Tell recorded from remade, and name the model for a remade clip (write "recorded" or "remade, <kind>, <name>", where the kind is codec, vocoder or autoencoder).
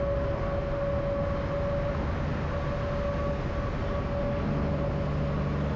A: recorded